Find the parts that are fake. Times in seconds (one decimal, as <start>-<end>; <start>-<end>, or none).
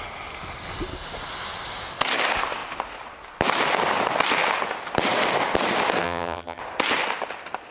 6.0-6.6